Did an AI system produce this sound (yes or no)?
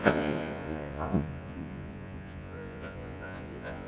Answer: yes